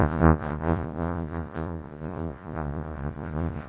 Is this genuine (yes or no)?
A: no